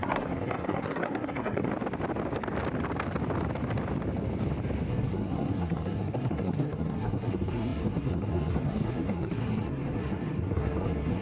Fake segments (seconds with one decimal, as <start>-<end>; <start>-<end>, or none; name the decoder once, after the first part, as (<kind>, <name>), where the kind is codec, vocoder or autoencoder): 0.0-1.7 (codec, SNAC); 4.9-11.2

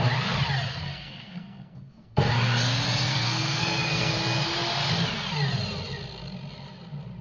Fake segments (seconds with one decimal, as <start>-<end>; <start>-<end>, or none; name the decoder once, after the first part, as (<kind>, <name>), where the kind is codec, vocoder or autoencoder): 0.7-2.3 (codec, SNAC); 3.1-4.1

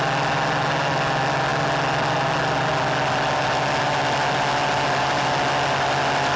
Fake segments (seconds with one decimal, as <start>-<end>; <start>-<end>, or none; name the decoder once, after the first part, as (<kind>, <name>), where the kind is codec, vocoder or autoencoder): none